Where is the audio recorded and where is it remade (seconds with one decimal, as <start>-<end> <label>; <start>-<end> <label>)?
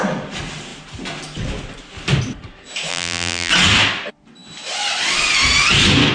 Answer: 0.0-2.9 recorded; 2.9-3.5 remade; 3.5-6.1 recorded